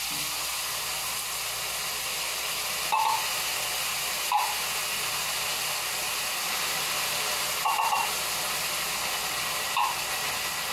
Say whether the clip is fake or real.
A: real